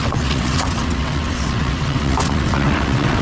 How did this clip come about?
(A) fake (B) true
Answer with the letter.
A